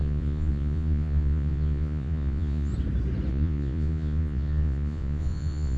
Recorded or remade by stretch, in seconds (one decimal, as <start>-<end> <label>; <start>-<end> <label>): 0.0-2.7 remade; 2.7-3.3 recorded; 3.3-5.8 remade

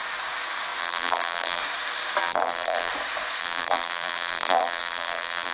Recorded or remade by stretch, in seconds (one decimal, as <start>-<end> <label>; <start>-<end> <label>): 0.0-0.8 recorded; 0.8-1.6 remade; 1.6-2.2 recorded; 2.2-2.9 remade; 2.9-3.4 recorded; 3.4-5.5 remade

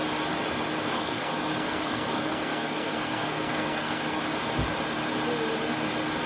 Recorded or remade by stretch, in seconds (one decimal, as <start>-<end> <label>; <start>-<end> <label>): 0.0-0.9 recorded; 0.9-4.2 remade; 4.2-6.3 recorded

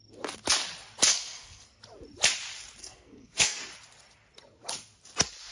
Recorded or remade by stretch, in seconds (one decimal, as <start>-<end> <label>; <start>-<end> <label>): 0.0-1.1 recorded; 1.1-1.8 remade; 1.8-2.8 recorded; 2.8-3.6 remade; 3.6-5.5 recorded

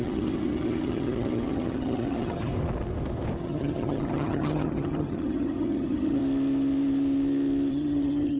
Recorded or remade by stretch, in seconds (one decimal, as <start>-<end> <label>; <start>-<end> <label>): 0.0-2.5 remade; 2.5-3.4 recorded; 3.4-6.2 remade; 6.2-7.7 recorded; 7.7-8.4 remade

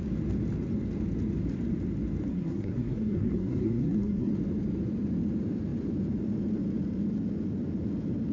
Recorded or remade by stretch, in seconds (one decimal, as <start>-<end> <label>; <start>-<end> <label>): 0.0-2.3 recorded; 2.3-4.3 remade; 4.3-8.3 recorded

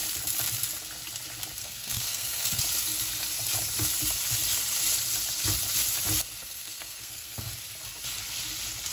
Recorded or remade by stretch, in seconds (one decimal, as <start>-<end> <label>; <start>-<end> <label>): 0.0-1.6 recorded; 1.6-2.6 remade; 2.6-6.4 recorded; 6.4-7.5 remade; 7.5-8.9 recorded